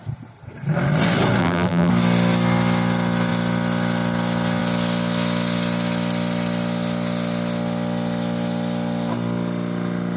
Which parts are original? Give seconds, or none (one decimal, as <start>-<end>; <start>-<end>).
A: 0.0-1.4; 1.9-10.2